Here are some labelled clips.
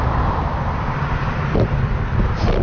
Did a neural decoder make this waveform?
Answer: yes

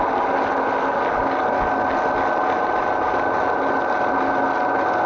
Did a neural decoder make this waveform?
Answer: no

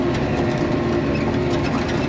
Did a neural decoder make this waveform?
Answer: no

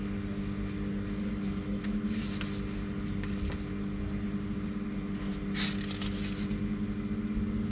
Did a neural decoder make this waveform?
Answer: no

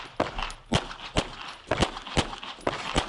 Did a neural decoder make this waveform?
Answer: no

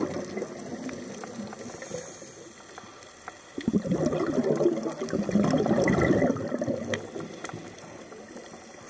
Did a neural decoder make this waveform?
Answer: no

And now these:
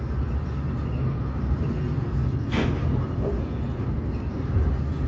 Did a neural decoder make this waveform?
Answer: no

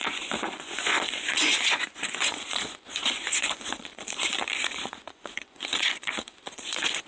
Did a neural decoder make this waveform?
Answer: yes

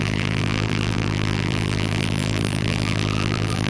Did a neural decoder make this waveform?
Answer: yes